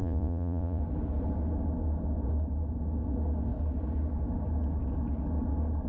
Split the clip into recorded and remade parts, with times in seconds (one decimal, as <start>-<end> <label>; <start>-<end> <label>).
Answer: 0.0-0.8 remade; 0.8-5.9 recorded